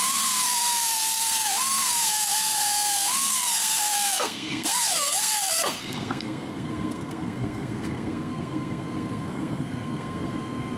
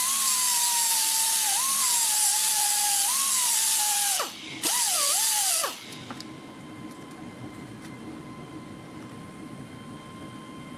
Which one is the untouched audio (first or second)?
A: second